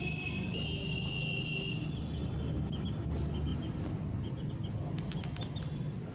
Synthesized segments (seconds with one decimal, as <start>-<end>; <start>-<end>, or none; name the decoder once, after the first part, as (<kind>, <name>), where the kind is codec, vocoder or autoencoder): none